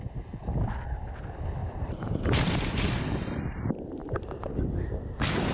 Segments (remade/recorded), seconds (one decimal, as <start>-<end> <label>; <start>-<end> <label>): 0.0-1.6 recorded; 1.6-3.4 remade; 3.4-4.0 recorded; 4.0-4.5 remade; 4.5-5.5 recorded